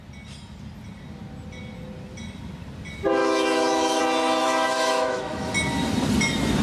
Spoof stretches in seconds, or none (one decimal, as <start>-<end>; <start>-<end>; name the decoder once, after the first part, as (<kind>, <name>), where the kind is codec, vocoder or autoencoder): 3.2-4.0 (autoencoder, DAC-VAE); 4.4-5.5